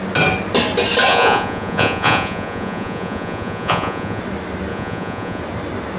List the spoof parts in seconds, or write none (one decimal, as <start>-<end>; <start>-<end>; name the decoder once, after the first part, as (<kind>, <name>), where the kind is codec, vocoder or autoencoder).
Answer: 1.1-4.2 (vocoder, Vocos); 4.7-5.4